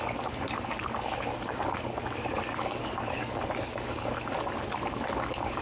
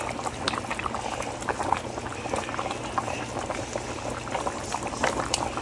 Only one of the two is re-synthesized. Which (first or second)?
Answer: first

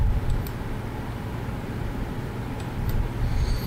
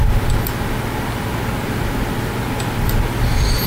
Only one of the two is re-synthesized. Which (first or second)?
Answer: first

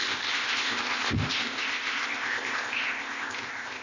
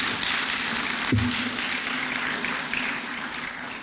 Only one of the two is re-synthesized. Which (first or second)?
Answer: first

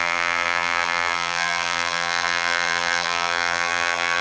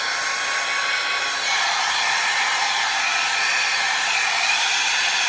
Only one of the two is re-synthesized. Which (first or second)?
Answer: first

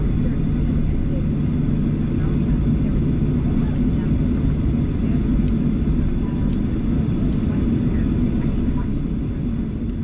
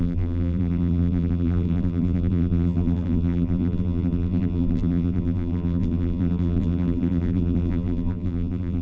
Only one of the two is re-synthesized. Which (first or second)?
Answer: second